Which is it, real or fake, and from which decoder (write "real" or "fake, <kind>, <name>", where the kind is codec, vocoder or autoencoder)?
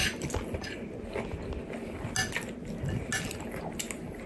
real